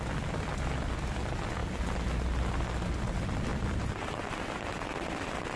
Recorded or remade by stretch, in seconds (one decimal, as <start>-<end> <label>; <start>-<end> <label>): 0.0-5.6 recorded